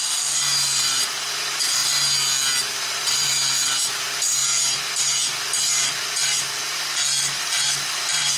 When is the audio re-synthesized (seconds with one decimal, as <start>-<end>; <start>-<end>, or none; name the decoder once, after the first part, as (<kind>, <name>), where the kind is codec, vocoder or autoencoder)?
0.0-1.8 (vocoder, BigVGAN v2); 2.6-6.6; 7.2-8.4